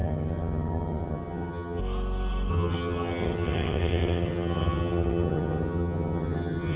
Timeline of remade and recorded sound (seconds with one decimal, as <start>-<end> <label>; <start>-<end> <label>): 0.0-1.8 remade; 1.8-2.5 recorded; 2.5-6.8 remade